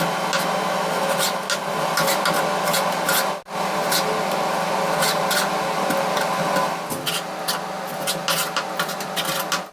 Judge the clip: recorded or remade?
recorded